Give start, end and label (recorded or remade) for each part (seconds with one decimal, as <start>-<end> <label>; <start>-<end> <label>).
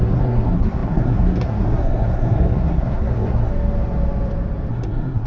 0.0-3.5 remade; 3.5-4.7 recorded; 4.7-5.3 remade